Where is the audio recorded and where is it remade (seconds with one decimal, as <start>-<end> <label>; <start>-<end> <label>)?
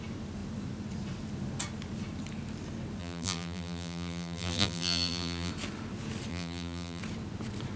0.0-3.0 recorded; 3.0-5.5 remade; 5.5-6.3 recorded; 6.3-7.0 remade; 7.0-7.8 recorded